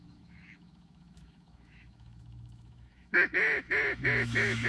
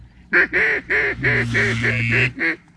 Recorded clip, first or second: second